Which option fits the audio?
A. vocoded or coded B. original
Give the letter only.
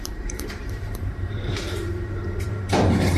A